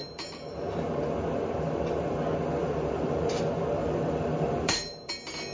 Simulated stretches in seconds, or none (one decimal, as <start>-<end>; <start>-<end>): 0.0-0.6; 2.6-3.4; 3.8-5.1